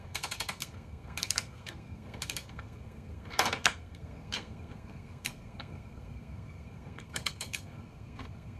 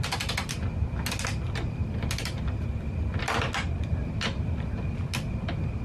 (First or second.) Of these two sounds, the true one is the second